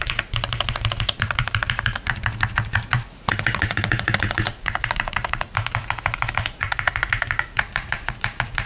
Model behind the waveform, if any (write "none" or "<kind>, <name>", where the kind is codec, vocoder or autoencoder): vocoder, Vocos